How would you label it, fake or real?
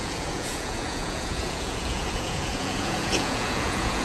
fake